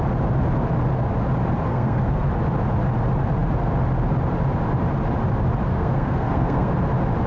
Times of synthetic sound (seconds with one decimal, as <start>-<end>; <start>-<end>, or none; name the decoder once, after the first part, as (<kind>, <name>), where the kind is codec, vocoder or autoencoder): 1.7-2.2 (codec, SNAC); 5.7-6.7